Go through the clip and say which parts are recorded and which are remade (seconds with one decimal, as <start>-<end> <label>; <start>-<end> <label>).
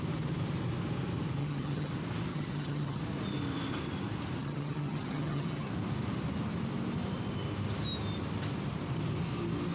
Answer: 0.0-1.4 recorded; 1.4-1.9 remade; 1.9-2.3 recorded; 2.3-3.0 remade; 3.0-4.4 recorded; 4.4-5.7 remade; 5.7-9.7 recorded